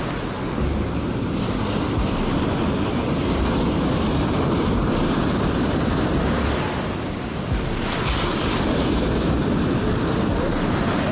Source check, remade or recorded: recorded